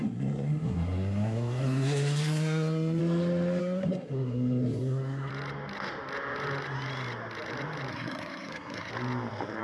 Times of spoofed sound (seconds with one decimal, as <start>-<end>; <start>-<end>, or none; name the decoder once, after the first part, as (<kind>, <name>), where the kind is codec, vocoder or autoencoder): 0.0-3.0 (codec, SNAC); 3.6-5.3; 7.9-8.9